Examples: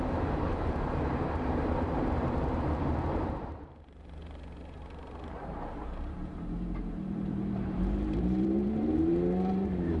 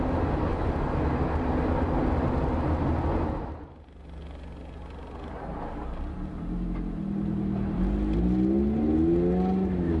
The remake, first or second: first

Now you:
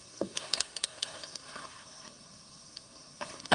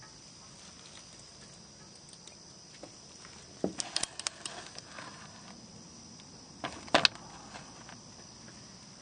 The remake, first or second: first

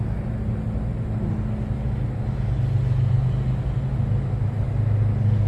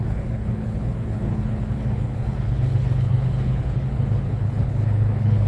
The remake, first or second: second